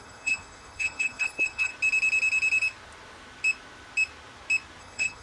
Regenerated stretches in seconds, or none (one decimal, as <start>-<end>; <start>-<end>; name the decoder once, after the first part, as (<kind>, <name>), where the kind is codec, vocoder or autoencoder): 0.0-1.7 (codec, HILCodec); 4.8-5.2